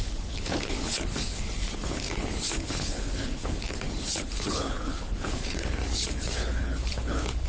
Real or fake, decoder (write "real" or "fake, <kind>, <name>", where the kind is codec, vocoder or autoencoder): fake, codec, HILCodec